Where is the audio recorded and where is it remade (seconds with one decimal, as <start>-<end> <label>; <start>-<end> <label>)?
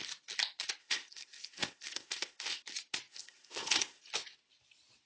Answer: 0.0-0.8 recorded; 0.8-2.6 remade; 2.6-3.1 recorded; 3.1-4.0 remade; 4.0-5.1 recorded